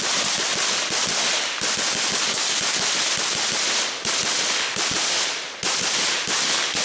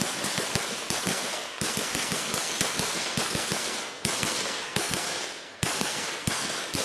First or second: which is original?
first